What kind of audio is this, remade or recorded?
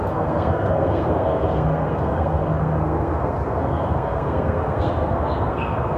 remade